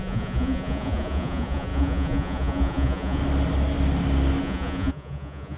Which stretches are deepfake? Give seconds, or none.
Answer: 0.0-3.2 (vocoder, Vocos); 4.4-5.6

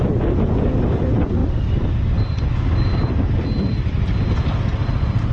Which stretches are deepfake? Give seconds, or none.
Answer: none

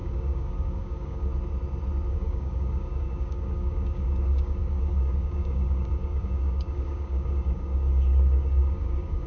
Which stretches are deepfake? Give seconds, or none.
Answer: 0.0-1.3 (codec, DAC); 2.1-9.3

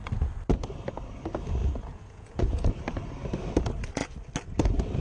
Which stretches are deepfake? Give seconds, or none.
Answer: 1.6-2.7 (vocoder, Vocos)

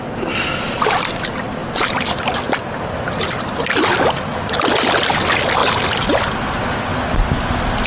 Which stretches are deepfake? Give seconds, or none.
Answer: 1.6-3.6 (vocoder, BigVGAN v2); 6.9-7.5

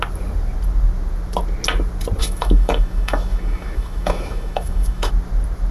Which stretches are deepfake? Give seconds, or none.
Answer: 2.2-5.1 (autoencoder, DAC-VAE)

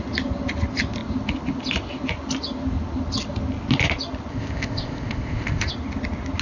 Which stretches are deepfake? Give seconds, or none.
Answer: 4.3-5.7 (codec, ZipCodec)